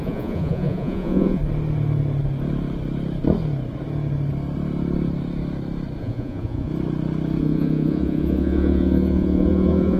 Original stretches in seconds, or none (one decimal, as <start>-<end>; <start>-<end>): 1.4-6.0; 6.7-7.4